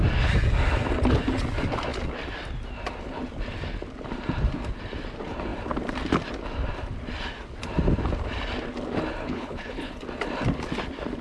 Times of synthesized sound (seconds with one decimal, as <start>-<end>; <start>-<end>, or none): 9.2-10.0